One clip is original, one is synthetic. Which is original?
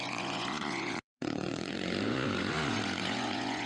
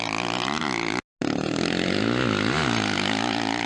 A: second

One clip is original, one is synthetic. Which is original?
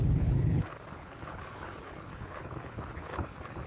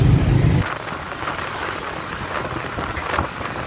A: second